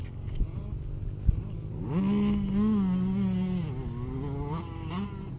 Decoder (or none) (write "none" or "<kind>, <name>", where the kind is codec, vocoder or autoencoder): none